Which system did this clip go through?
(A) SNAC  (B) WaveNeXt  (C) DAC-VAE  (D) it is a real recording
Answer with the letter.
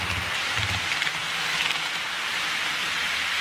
D